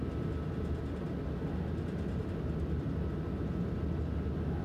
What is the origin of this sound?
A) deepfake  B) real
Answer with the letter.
B